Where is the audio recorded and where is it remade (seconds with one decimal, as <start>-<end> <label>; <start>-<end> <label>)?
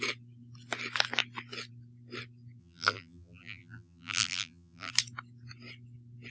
0.0-2.6 recorded; 2.6-4.9 remade; 4.9-6.3 recorded